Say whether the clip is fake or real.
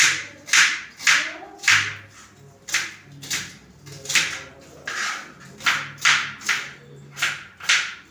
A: real